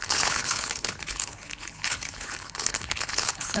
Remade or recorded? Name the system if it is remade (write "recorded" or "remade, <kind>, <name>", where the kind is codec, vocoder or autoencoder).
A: remade, codec, HILCodec